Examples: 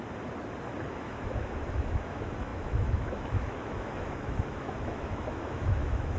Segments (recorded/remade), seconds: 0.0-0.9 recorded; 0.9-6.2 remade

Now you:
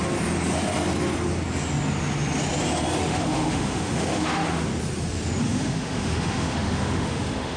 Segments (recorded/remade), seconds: 0.0-3.0 recorded; 3.0-4.7 remade; 4.7-5.4 recorded; 5.4-7.6 remade

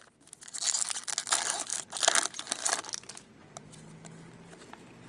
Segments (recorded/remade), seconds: 0.0-5.1 recorded

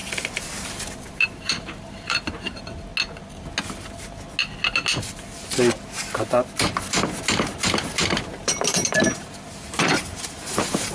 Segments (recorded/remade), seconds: 0.0-1.1 recorded; 1.1-2.9 remade; 2.9-5.7 recorded; 5.7-10.9 remade